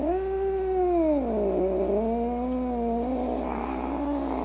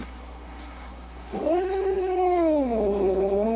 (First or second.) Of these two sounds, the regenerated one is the second